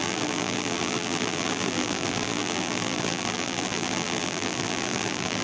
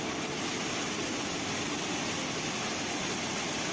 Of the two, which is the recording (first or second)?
second